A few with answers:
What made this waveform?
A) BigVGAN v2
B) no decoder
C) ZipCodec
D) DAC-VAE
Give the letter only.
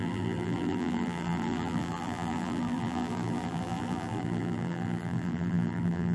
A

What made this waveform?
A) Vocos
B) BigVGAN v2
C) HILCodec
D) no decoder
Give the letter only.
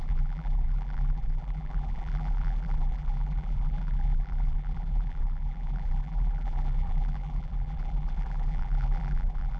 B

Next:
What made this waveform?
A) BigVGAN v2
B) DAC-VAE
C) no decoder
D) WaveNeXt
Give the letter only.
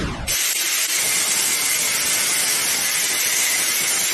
A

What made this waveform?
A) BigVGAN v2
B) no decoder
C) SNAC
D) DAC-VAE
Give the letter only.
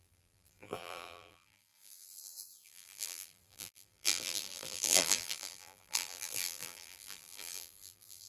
A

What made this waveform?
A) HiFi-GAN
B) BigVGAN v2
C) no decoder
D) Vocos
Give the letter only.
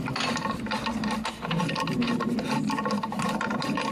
C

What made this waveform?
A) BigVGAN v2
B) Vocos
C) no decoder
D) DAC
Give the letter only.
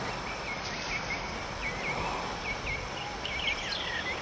C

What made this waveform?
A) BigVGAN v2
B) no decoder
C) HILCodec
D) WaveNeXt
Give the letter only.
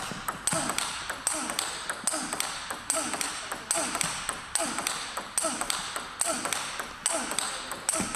B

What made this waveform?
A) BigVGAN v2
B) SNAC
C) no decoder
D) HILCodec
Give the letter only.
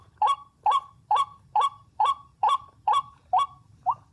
A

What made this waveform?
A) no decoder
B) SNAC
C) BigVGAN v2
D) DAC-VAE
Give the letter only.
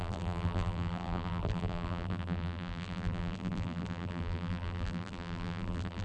C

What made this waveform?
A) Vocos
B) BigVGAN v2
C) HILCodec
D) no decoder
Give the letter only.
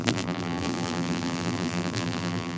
B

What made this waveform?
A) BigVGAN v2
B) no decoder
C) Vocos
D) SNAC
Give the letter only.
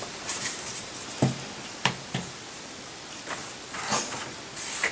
B